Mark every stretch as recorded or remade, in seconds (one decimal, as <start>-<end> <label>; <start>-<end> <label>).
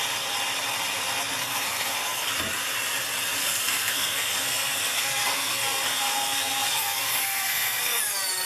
0.0-1.4 recorded; 1.4-2.3 remade; 2.3-3.4 recorded; 3.4-8.0 remade; 8.0-8.5 recorded